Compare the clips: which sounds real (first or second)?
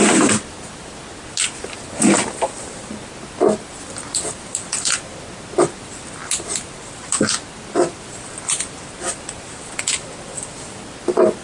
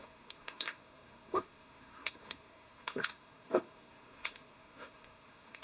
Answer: first